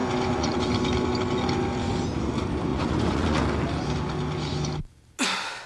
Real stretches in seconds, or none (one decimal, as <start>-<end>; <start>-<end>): 0.6-2.7; 3.4-5.7